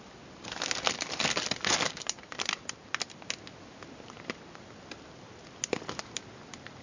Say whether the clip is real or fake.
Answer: real